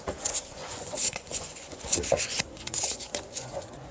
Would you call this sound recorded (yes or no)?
no